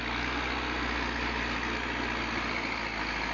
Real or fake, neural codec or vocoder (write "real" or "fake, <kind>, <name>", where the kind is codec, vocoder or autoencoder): real